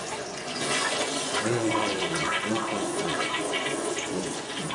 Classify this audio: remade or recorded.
remade